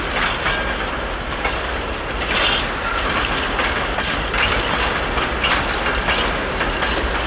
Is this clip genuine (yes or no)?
yes